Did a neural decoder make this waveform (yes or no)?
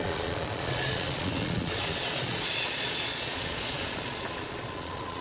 yes